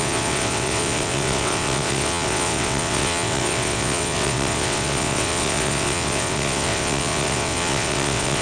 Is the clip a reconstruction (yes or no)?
yes